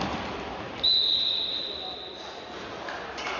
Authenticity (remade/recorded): recorded